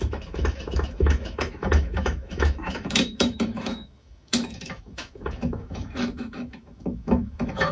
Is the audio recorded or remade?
remade